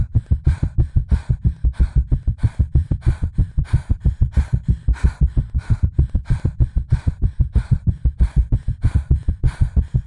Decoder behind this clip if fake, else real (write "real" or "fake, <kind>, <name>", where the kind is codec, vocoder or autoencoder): real